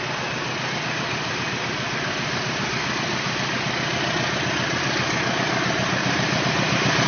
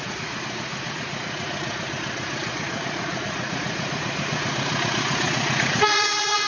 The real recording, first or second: first